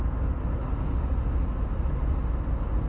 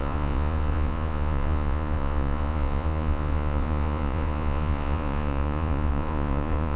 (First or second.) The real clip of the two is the first